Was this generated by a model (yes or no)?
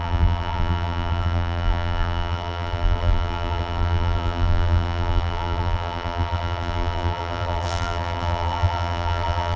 yes